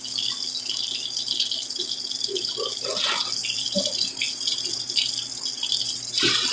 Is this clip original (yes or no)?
yes